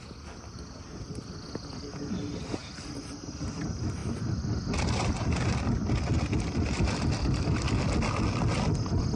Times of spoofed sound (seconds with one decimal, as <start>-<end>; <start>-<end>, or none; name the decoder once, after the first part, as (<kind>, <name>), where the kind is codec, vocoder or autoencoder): none